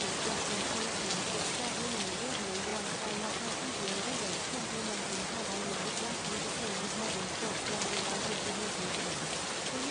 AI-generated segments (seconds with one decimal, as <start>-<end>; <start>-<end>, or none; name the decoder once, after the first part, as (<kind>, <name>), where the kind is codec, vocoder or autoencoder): none